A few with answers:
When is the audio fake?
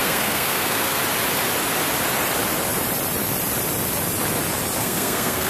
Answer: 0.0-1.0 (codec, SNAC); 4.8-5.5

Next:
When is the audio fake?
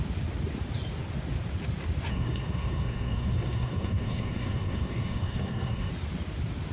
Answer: 2.1-5.9 (codec, SNAC)